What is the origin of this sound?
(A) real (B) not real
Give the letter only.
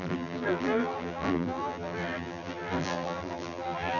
B